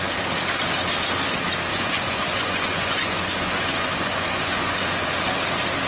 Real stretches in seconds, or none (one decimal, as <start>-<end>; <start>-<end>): 0.0-1.7; 5.0-5.9